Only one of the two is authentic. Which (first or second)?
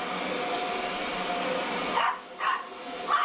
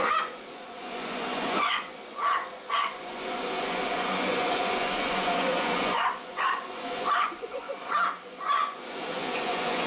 first